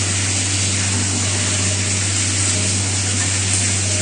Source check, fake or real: real